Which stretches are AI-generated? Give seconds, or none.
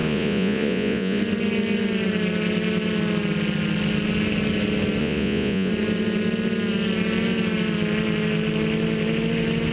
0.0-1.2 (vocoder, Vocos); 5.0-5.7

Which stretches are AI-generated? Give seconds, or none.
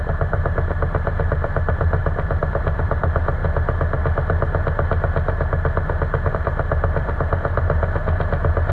0.0-3.4 (vocoder, BigVGAN v2); 6.3-7.8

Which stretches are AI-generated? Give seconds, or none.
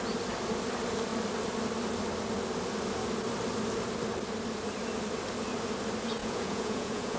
6.2-7.2 (vocoder, Vocos)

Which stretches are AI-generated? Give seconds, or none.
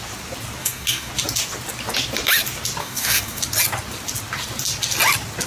0.6-1.1 (codec, DAC); 2.8-3.4